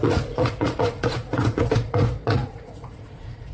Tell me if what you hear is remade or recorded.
remade